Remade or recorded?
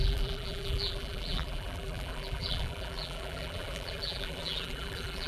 remade